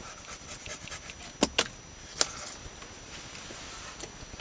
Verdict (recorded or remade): recorded